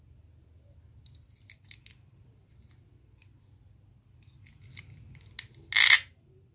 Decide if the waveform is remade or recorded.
recorded